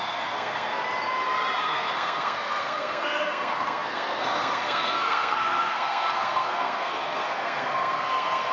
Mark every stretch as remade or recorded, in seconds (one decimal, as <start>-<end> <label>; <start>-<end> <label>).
0.0-0.8 remade; 0.8-1.6 recorded; 1.6-8.5 remade

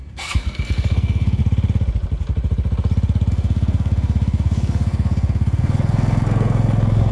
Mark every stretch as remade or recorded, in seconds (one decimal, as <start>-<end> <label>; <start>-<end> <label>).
0.0-1.4 remade; 1.4-3.3 recorded; 3.3-7.1 remade

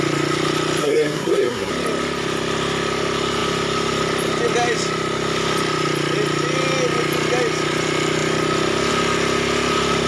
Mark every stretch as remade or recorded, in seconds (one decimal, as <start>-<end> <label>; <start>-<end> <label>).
0.0-0.8 recorded; 0.8-1.7 remade; 1.7-10.1 recorded

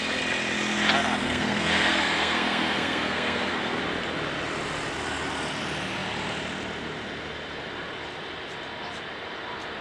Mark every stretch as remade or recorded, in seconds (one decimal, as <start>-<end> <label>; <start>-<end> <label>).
0.0-1.2 recorded; 1.2-3.8 remade; 3.8-9.8 recorded